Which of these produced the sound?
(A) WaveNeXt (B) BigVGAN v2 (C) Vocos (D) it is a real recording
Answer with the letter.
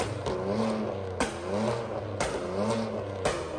D